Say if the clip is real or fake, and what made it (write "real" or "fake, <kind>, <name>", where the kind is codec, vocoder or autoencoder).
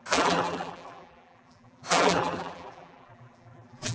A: fake, vocoder, BigVGAN v2